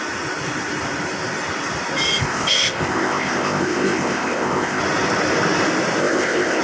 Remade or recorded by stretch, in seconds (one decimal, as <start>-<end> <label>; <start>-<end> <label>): 0.0-2.2 recorded; 2.2-4.8 remade; 4.8-6.0 recorded; 6.0-6.6 remade